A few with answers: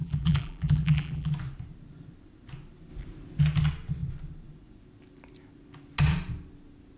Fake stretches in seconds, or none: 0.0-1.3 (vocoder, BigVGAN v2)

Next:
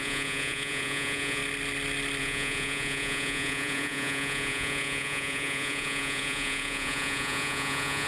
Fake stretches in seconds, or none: 0.0-1.4 (vocoder, Vocos); 2.2-8.1

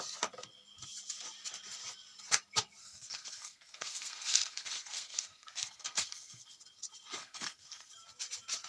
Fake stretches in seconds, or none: 2.8-6.6 (codec, SNAC); 7.2-7.9

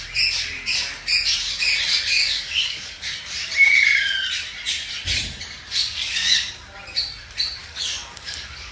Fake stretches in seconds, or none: 2.1-3.2 (codec, DAC); 5.8-6.5; 7.6-8.7

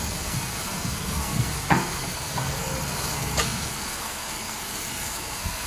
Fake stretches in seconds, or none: 0.0-5.7 (codec, SNAC)

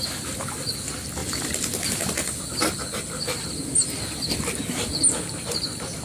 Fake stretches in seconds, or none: none

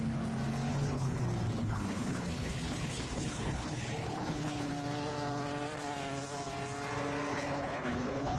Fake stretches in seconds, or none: 0.7-1.2 (codec, HILCodec); 1.6-4.7; 7.3-8.4

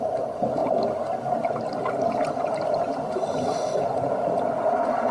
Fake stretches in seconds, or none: none